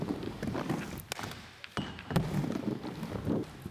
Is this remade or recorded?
recorded